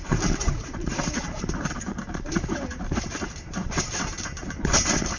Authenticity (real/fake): fake